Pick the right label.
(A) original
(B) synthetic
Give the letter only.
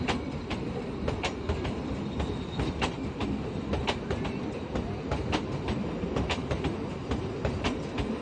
A